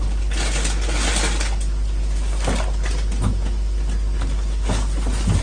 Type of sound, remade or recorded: recorded